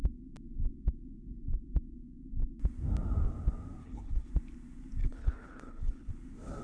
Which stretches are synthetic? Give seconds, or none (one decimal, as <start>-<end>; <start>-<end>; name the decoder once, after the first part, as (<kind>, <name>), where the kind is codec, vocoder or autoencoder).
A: 3.8-4.3 (codec, HILCodec); 5.0-6.1